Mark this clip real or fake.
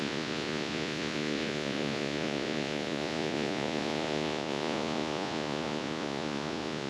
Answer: fake